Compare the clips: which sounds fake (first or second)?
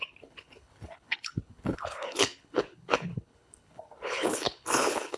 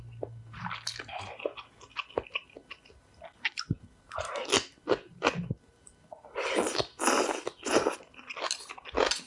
first